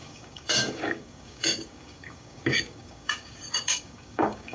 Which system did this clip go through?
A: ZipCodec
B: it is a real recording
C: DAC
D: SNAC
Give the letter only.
C